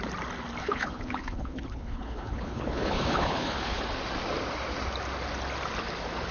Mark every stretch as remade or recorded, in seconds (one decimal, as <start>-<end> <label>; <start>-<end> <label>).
0.0-0.6 recorded; 0.6-3.8 remade; 3.8-6.3 recorded